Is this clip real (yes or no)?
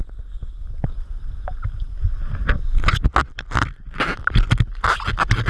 yes